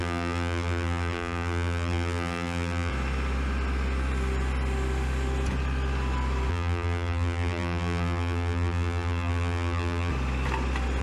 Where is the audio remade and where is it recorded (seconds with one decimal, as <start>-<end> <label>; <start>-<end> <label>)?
0.0-2.9 remade; 2.9-6.5 recorded; 6.5-10.1 remade; 10.1-11.0 recorded